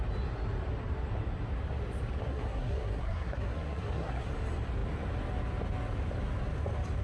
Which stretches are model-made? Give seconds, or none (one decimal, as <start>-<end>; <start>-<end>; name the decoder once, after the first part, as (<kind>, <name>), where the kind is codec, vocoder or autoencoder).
2.3-4.3 (codec, SNAC)